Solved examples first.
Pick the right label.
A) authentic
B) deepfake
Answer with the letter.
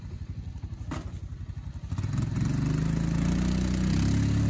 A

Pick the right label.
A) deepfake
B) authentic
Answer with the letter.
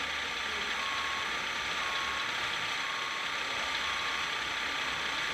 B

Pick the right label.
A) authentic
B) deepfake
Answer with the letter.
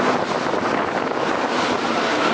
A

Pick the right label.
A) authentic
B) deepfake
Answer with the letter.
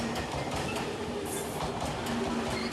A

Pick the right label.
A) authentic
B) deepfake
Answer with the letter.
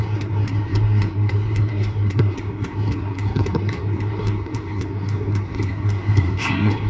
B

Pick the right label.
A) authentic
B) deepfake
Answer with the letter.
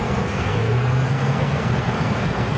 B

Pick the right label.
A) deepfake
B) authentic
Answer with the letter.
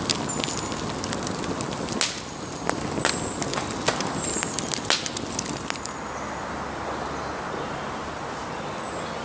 B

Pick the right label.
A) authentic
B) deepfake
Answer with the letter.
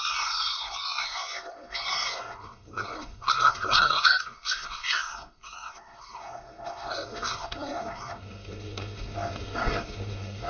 B